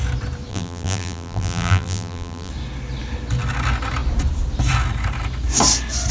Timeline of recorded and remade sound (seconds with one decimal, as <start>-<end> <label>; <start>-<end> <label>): 0.0-0.5 recorded; 0.5-2.5 remade; 2.5-6.1 recorded